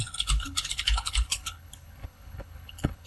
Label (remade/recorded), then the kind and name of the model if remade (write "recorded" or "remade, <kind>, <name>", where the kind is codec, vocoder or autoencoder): remade, codec, HILCodec